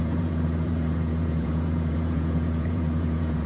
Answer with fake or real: fake